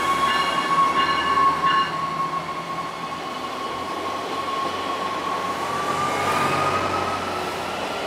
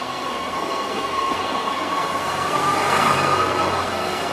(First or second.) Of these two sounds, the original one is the first